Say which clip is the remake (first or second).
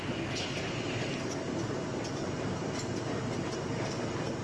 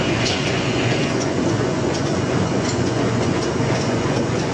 second